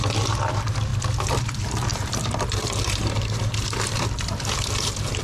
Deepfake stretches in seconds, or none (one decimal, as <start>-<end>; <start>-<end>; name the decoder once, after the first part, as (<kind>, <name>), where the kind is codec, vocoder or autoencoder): 0.0-0.9 (vocoder, BigVGAN v2); 1.4-5.2